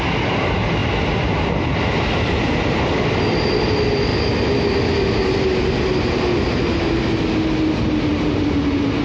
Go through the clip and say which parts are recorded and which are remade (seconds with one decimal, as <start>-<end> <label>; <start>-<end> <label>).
0.0-9.0 recorded